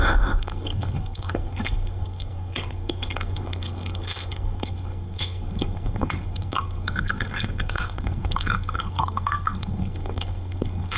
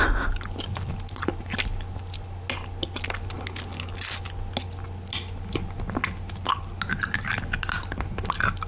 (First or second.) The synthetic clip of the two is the first